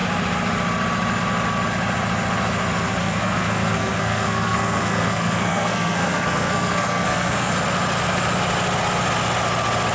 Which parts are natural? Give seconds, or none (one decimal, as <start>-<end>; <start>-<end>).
0.0-3.0; 7.5-9.9